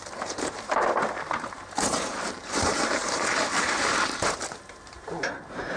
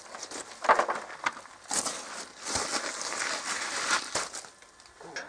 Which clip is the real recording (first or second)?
second